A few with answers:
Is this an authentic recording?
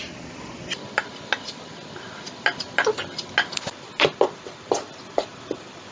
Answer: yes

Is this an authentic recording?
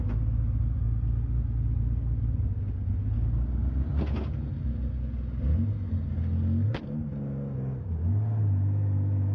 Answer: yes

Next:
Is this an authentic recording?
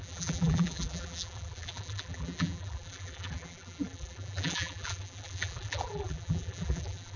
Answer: no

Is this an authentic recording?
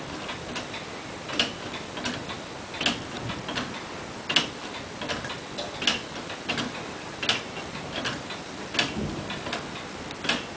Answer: yes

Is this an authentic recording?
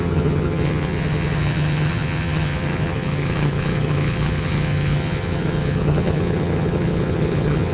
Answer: no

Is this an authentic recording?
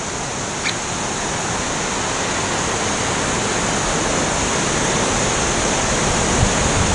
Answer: yes